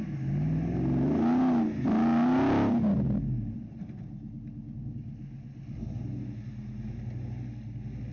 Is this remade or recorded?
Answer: recorded